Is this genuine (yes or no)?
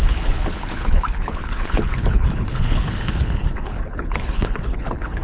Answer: no